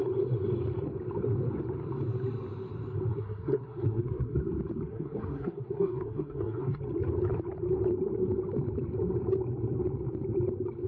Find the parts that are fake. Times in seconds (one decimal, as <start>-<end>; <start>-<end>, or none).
3.1-4.4; 4.9-6.8